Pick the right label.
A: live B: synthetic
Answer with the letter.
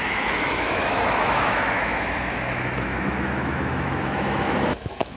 B